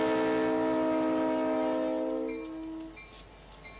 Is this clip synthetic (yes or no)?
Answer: no